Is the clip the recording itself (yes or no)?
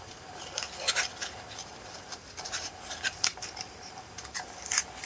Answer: no